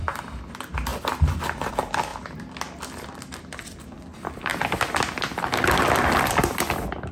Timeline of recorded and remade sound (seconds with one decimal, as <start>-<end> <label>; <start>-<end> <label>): 0.0-7.1 recorded